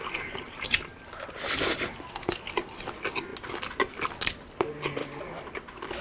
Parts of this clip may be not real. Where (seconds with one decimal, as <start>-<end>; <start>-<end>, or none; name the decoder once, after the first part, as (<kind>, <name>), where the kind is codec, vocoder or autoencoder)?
5.0-5.5 (vocoder, BigVGAN v2)